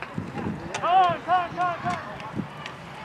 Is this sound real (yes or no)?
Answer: yes